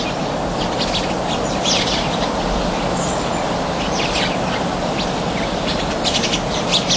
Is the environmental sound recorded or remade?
recorded